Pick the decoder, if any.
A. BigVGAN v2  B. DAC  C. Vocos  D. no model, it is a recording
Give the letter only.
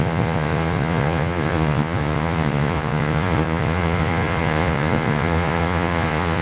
C